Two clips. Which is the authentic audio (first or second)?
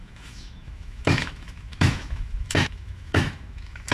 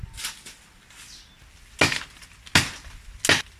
second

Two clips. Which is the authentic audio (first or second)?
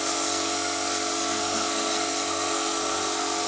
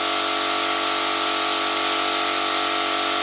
second